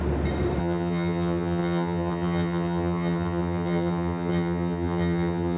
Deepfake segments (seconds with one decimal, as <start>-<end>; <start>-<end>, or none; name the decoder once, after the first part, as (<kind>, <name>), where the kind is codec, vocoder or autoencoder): 0.6-5.6 (vocoder, HiFi-GAN)